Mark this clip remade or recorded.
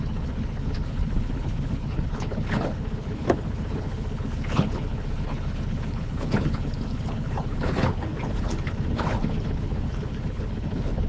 remade